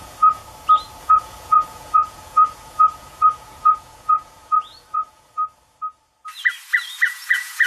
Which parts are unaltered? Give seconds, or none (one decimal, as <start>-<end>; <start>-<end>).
0.4-1.0; 5.4-7.1